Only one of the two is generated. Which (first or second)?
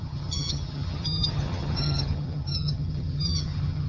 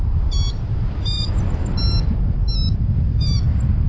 first